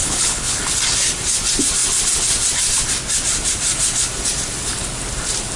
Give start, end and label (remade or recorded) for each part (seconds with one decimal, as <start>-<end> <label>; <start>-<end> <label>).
0.0-0.6 remade; 0.6-5.6 recorded